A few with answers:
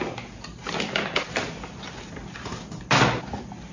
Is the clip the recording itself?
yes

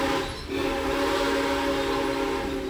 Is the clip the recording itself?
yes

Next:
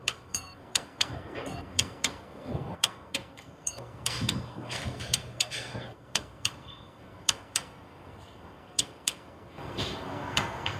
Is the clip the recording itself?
no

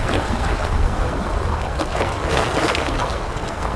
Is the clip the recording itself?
no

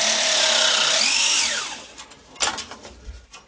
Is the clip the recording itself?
yes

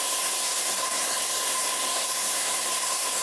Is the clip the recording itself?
no